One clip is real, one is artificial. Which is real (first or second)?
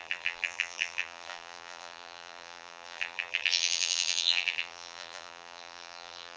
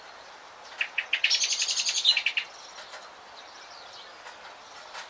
second